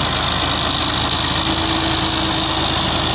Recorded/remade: recorded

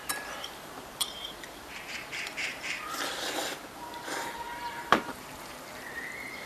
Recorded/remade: remade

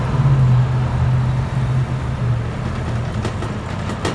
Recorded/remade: recorded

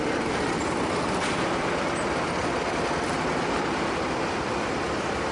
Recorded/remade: recorded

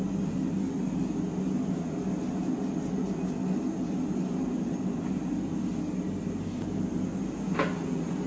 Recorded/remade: recorded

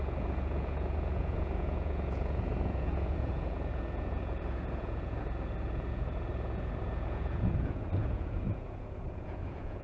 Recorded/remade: remade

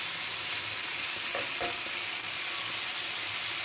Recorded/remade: recorded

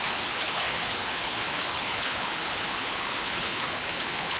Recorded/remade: remade